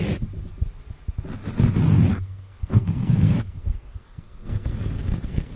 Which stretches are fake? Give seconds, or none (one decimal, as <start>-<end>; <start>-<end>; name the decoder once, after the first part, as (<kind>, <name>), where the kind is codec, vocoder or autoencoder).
2.1-5.6 (codec, SNAC)